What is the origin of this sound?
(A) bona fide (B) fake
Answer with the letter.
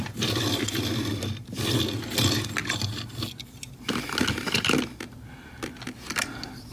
A